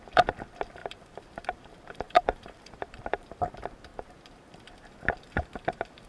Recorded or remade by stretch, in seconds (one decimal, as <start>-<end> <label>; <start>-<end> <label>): 0.0-0.8 recorded; 0.8-3.4 remade; 3.4-6.1 recorded